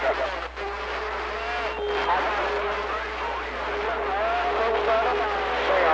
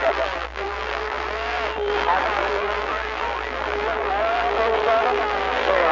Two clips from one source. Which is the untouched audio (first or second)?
first